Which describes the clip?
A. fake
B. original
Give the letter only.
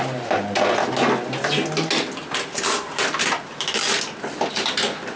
B